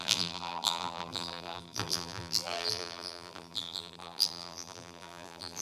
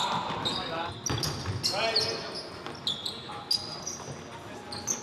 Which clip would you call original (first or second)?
second